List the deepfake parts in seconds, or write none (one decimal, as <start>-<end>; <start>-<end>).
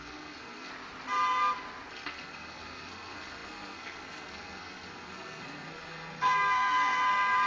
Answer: 0.0-0.7; 1.9-7.5